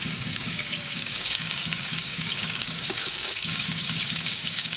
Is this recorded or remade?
remade